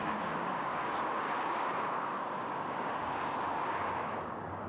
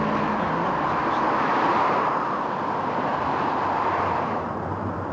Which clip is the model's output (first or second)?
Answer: first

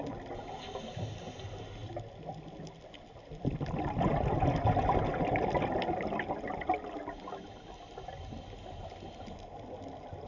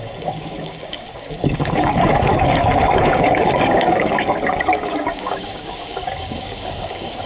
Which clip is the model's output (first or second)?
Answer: second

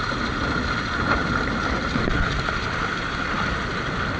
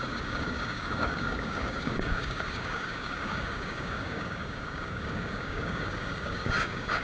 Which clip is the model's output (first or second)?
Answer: second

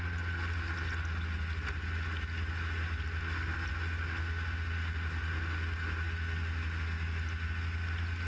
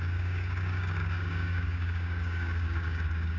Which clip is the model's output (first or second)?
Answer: second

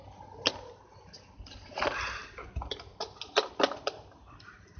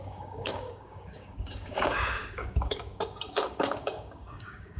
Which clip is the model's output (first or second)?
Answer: second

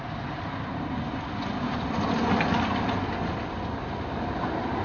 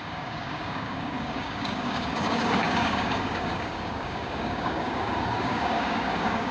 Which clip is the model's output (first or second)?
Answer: second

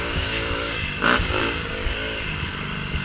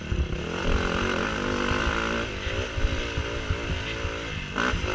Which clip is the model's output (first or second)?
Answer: first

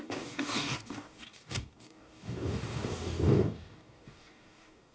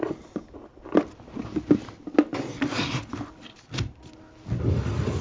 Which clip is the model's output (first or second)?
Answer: first